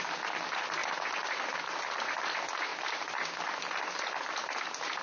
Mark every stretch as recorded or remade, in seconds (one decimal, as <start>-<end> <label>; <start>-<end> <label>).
0.0-5.0 recorded

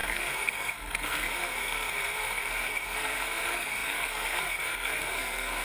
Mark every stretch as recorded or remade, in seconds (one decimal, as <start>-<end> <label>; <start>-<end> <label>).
0.0-5.6 remade

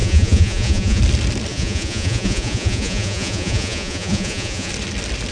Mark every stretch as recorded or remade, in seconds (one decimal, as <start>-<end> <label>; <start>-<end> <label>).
0.0-1.0 remade; 1.0-1.5 recorded; 1.5-4.7 remade; 4.7-5.3 recorded

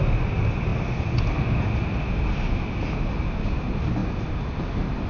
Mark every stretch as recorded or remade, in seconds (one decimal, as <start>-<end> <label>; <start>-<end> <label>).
0.0-5.1 recorded

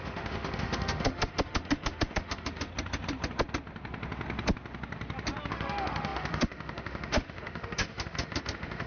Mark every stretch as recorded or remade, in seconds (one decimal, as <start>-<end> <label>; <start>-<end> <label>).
0.0-2.7 remade; 2.7-5.5 recorded; 5.5-8.9 remade

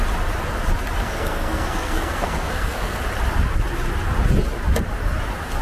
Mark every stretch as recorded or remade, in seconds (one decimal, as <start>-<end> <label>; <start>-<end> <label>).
0.0-1.0 recorded; 1.0-3.0 remade; 3.0-5.6 recorded

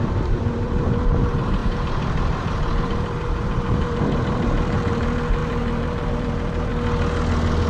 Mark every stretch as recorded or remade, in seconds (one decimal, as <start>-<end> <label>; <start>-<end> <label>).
0.0-6.7 remade; 6.7-7.7 recorded

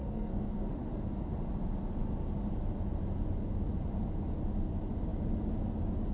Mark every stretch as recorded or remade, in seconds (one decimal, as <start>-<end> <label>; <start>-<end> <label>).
0.0-0.7 remade; 0.7-6.1 recorded